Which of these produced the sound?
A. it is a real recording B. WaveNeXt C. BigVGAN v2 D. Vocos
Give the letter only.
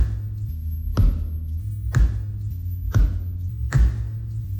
A